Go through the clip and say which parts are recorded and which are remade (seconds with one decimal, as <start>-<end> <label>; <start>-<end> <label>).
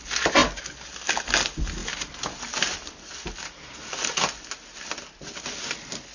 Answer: 0.0-6.1 recorded